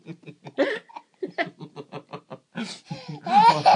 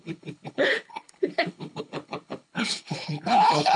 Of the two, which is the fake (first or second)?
second